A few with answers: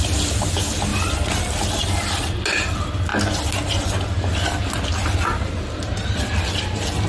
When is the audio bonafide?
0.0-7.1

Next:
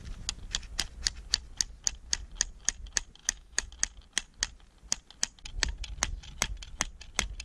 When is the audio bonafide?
0.0-3.2; 3.7-7.4